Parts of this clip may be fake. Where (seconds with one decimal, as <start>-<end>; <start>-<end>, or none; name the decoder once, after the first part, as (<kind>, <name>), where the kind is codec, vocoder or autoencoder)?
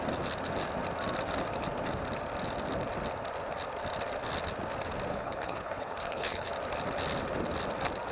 5.1-6.5 (codec, HILCodec)